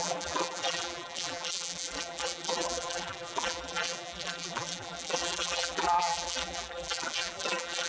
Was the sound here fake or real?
fake